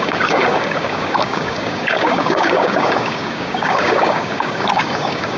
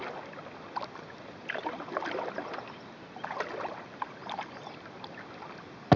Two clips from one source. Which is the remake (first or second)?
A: first